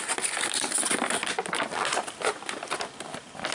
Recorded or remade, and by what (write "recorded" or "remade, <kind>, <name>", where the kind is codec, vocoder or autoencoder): recorded